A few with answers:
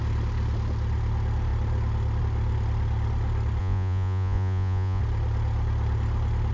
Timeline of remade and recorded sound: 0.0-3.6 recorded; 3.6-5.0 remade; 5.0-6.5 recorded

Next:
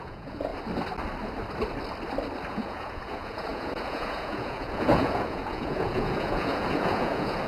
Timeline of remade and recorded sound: 0.0-0.5 remade; 0.5-2.5 recorded; 2.5-7.5 remade